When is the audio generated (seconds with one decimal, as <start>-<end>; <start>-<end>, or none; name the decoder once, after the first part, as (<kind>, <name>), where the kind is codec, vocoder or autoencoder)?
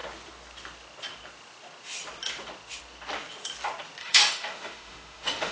4.0-5.5 (autoencoder, DAC-VAE)